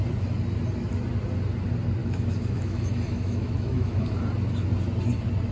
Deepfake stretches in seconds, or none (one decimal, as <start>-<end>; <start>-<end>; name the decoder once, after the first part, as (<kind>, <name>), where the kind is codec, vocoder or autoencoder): 2.0-4.1 (autoencoder, DAC-VAE)